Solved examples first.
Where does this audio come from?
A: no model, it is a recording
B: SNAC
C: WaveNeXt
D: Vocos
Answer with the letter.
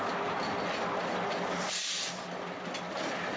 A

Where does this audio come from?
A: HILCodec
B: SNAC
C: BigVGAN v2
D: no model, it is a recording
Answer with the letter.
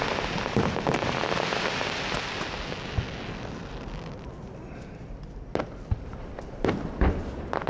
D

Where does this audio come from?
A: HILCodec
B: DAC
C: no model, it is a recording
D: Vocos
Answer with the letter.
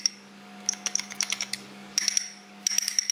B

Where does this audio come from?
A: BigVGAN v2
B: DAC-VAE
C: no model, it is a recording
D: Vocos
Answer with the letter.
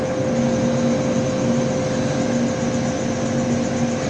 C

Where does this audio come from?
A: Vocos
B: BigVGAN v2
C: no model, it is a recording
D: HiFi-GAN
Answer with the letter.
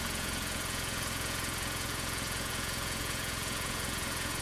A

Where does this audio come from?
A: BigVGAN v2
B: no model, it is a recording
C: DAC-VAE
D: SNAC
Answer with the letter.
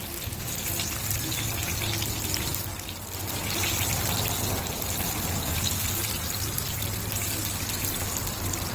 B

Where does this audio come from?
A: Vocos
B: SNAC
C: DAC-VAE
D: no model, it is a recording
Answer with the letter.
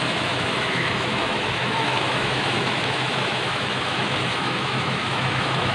C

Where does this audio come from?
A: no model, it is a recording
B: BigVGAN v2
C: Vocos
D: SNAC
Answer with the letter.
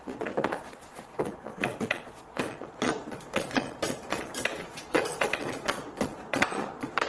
C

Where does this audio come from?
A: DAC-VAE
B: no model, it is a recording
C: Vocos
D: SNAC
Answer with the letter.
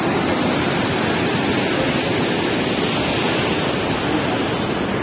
B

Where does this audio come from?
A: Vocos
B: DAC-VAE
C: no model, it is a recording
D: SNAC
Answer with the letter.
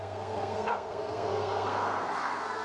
D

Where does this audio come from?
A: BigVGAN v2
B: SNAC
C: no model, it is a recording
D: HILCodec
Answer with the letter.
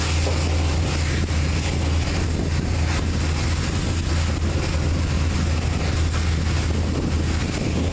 C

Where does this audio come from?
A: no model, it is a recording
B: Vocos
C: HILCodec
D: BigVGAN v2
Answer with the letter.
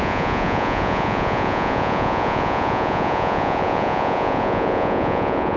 B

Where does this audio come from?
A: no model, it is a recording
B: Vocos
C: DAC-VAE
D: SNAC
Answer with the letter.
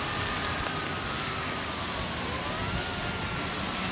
A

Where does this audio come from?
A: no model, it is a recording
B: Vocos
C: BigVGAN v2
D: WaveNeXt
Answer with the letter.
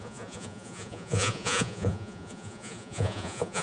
B